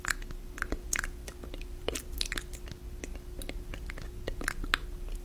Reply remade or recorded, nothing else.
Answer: recorded